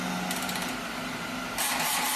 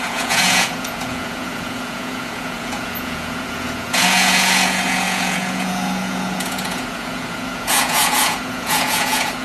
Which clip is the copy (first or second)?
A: second